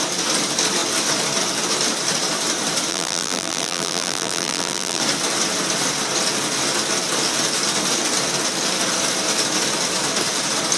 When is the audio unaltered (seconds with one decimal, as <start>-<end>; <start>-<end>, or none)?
0.0-2.9; 5.0-10.8